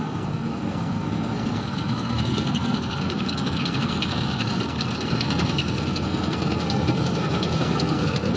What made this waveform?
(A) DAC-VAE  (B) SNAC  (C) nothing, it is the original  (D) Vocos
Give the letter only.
B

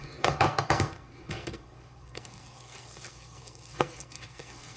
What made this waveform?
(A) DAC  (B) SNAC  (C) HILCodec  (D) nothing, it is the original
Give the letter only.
B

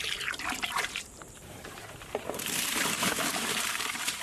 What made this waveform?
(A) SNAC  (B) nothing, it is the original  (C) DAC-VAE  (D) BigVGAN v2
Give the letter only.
D